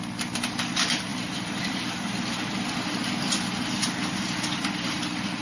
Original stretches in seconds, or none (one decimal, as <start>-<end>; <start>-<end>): 0.0-1.1; 2.0-5.4